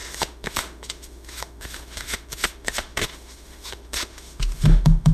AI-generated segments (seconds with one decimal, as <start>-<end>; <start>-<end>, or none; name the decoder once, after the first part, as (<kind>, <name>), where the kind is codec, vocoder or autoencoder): 0.0-5.1 (autoencoder, DAC-VAE)